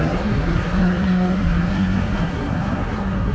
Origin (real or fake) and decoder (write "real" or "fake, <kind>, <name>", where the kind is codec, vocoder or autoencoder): fake, codec, SNAC